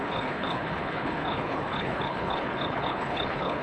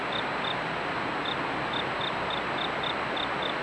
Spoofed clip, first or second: first